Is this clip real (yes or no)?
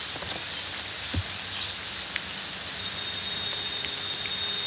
yes